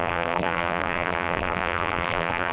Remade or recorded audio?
remade